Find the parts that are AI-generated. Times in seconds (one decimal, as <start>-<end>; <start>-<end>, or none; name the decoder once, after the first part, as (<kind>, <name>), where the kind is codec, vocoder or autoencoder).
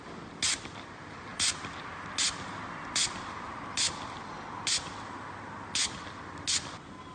none